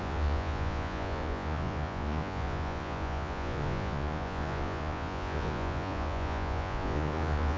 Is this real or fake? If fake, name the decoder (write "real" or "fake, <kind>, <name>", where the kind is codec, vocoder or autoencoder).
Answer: fake, vocoder, Vocos